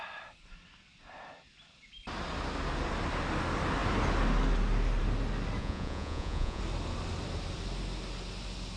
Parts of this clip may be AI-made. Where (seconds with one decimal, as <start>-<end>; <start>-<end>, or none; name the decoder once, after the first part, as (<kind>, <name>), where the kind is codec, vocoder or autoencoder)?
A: 5.6-6.6 (vocoder, Vocos)